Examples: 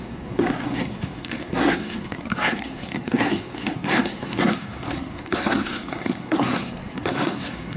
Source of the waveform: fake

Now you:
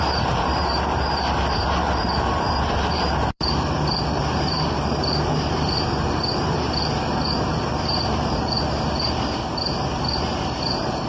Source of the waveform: fake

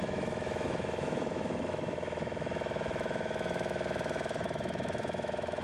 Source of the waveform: fake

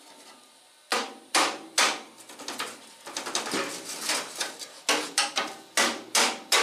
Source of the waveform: real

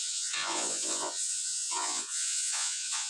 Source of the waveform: fake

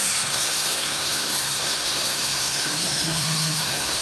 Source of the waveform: fake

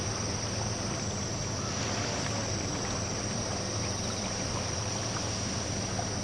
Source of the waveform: real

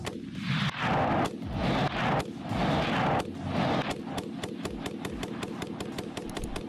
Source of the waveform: real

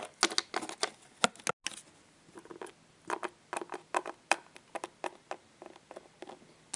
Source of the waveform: real